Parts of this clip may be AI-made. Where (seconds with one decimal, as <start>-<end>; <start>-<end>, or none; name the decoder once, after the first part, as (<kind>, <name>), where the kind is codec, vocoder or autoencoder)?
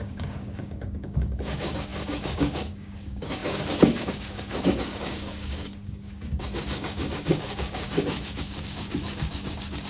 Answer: 0.0-9.9 (codec, DAC)